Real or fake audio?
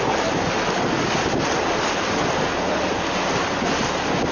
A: real